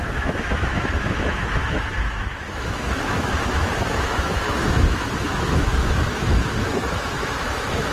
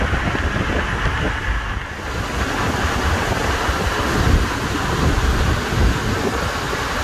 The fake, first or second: first